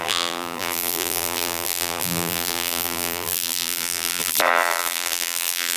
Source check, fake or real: fake